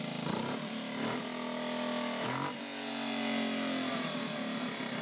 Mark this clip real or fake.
real